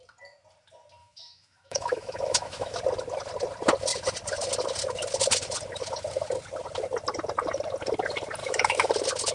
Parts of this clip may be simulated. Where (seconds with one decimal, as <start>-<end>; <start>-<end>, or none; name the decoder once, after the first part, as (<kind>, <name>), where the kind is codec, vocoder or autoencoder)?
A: 1.0-2.8 (autoencoder, DAC-VAE); 8.4-8.9